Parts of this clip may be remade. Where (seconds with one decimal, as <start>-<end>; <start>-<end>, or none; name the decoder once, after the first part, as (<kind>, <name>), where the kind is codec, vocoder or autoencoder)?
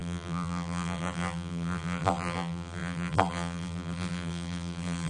0.0-5.1 (vocoder, BigVGAN v2)